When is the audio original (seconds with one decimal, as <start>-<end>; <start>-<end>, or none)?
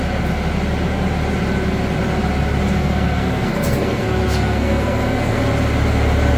0.0-2.8; 5.4-6.4